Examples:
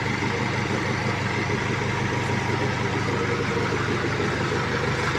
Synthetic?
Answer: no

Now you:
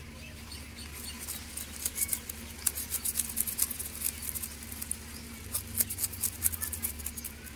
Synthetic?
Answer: no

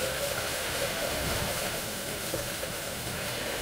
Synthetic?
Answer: yes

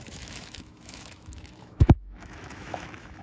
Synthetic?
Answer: yes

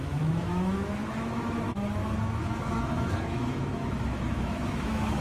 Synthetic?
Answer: yes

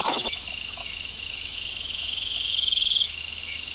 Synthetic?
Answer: yes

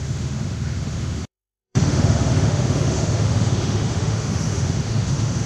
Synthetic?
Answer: yes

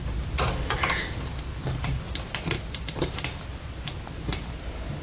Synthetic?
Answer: no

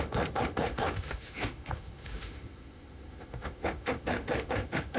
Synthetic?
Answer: yes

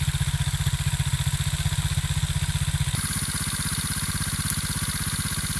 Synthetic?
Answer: no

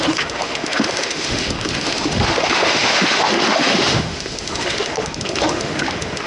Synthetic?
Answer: yes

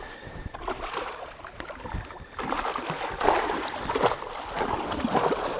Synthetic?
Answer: no